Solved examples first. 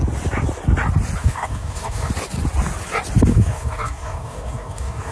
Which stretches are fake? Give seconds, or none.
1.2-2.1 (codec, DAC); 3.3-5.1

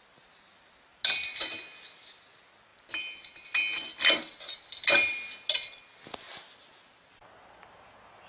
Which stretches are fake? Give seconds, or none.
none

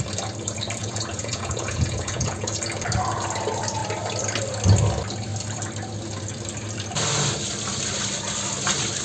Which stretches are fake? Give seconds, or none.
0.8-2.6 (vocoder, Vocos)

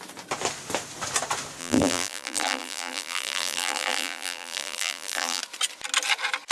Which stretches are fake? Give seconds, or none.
1.6-5.4 (vocoder, BigVGAN v2)